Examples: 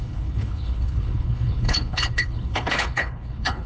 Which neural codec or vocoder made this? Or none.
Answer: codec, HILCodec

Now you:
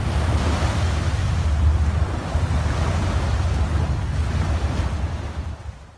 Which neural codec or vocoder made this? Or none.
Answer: none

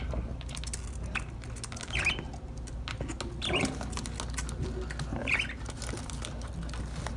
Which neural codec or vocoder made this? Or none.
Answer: none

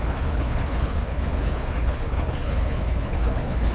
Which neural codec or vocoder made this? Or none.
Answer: codec, HILCodec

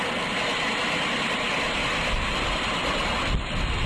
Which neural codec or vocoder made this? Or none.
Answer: none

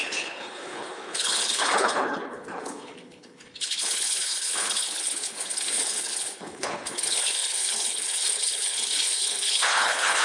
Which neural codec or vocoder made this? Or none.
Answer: codec, HILCodec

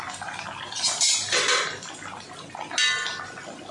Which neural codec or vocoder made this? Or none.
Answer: none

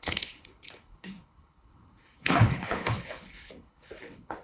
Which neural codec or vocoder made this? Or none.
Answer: codec, HILCodec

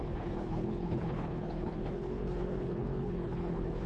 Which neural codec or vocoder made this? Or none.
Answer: codec, HILCodec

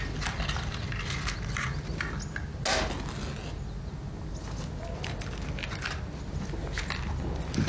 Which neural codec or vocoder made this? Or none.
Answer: none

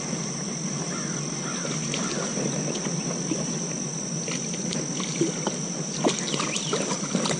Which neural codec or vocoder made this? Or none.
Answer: none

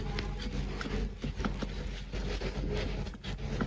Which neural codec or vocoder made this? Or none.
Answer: none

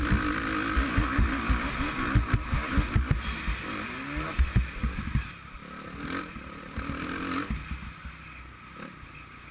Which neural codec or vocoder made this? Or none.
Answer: none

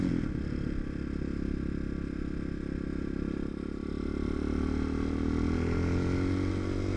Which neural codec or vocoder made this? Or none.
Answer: none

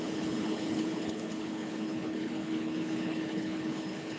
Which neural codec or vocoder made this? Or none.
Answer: codec, HILCodec